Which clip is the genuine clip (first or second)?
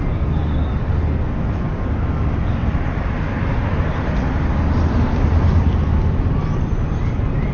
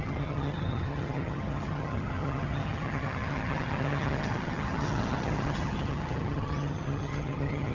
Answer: first